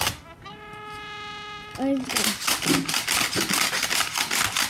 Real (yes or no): yes